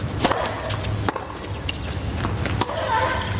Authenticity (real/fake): real